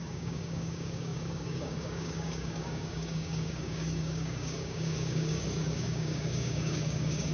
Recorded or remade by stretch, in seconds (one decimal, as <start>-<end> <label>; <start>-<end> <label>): 0.0-7.3 remade